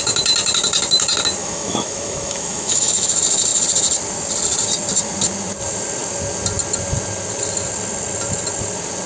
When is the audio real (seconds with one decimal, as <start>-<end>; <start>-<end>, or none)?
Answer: 0.0-1.4; 3.1-9.1